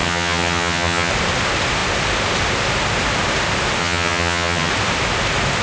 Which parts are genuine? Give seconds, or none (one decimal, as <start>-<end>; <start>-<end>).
1.1-3.8; 4.7-5.6